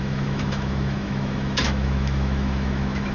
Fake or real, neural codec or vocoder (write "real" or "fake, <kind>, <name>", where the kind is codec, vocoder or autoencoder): fake, autoencoder, DAC-VAE